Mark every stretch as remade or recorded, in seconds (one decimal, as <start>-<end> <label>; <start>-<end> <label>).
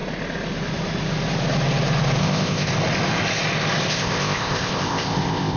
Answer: 0.0-2.2 recorded; 2.2-2.7 remade; 2.7-3.9 recorded; 3.9-5.6 remade